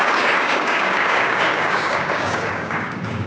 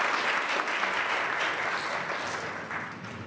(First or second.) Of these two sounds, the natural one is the second